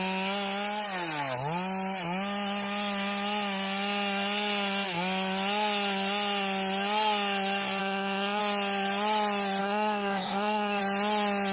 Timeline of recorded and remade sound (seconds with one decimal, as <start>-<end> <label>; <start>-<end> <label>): 0.0-7.8 recorded; 7.8-8.4 remade; 8.4-9.6 recorded; 9.6-10.8 remade; 10.8-11.5 recorded